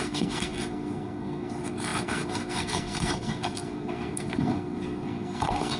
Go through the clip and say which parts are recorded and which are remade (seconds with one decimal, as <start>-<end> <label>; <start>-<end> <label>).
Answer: 0.0-5.8 remade